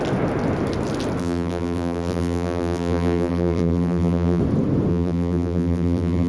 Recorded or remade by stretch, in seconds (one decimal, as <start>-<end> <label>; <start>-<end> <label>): 0.0-1.2 recorded; 1.2-4.4 remade; 4.4-4.9 recorded; 4.9-6.3 remade